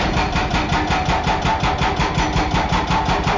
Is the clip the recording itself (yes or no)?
yes